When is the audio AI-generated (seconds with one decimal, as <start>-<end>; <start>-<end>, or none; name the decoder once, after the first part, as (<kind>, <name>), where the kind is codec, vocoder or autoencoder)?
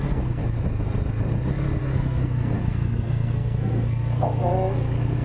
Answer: 0.0-0.4 (codec, SNAC); 1.8-5.2